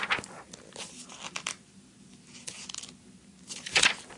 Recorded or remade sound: recorded